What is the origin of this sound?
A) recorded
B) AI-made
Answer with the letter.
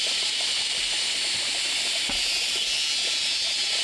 A